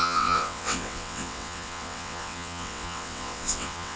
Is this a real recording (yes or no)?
no